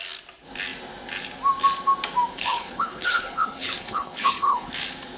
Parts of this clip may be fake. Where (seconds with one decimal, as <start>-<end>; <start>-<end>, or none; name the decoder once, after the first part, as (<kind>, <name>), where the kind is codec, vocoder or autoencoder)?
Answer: 2.3-4.7 (codec, HILCodec)